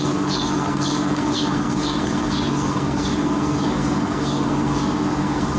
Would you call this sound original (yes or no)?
no